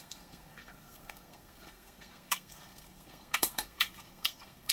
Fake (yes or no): yes